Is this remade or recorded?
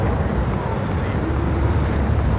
recorded